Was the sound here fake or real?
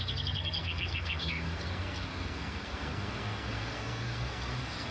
fake